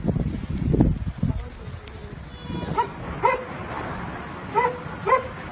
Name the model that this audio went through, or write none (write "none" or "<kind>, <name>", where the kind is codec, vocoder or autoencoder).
none